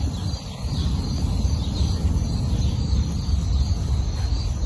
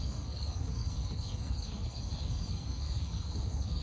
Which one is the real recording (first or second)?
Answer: first